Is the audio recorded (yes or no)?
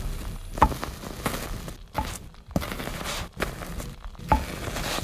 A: yes